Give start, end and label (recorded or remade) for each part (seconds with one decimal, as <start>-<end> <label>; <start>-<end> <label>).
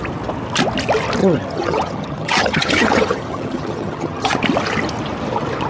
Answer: 0.0-1.2 recorded; 1.2-4.4 remade; 4.4-5.7 recorded